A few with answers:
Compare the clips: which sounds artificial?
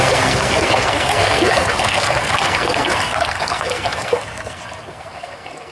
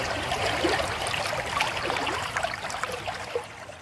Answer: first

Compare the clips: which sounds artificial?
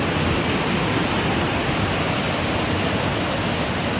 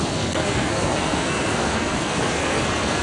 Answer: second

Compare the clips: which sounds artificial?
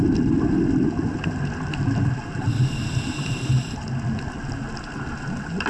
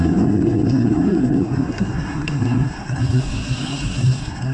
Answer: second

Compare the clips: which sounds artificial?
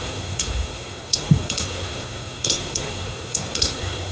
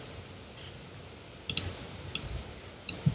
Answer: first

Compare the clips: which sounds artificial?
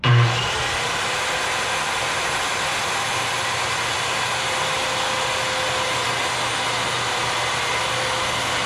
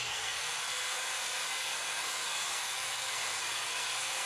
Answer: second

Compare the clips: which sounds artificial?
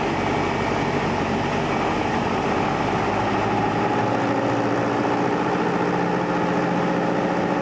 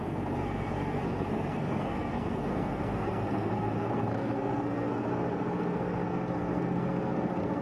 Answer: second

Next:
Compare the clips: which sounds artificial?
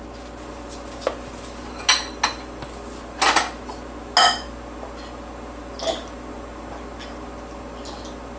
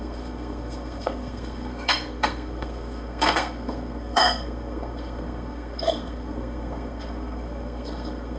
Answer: second